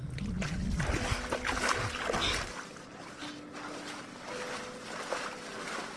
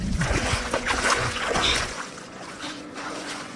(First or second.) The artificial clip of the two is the second